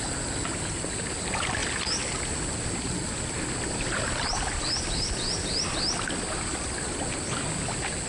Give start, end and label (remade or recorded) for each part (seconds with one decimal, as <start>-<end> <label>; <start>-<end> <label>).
0.0-8.1 recorded